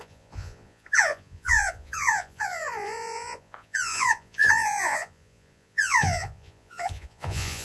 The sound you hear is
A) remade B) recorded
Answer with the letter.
A